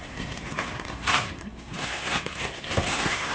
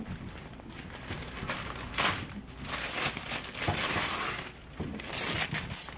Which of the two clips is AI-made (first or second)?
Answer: first